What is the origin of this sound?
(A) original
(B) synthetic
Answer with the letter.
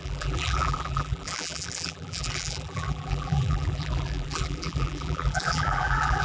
B